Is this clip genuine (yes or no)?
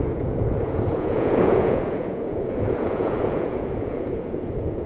no